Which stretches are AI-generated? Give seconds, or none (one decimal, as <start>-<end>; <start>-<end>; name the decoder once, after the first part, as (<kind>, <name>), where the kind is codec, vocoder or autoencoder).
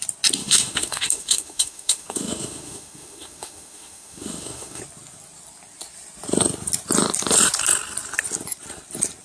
0.4-4.8 (autoencoder, DAC-VAE)